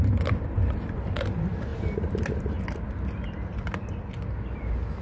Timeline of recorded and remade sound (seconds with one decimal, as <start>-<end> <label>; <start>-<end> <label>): 0.0-5.0 recorded